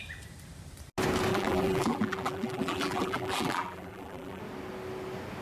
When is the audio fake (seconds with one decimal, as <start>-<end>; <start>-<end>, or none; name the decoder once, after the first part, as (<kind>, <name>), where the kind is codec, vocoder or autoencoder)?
1.3-4.4 (vocoder, BigVGAN v2)